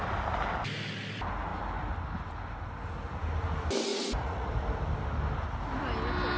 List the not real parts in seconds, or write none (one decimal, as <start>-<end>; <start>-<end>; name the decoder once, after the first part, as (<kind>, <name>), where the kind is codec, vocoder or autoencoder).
3.9-4.5 (vocoder, Vocos)